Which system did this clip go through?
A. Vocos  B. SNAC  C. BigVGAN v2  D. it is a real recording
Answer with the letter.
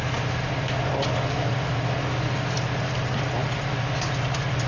D